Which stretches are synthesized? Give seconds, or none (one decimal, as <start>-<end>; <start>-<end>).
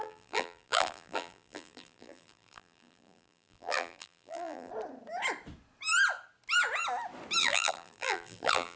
0.0-4.7; 7.4-8.8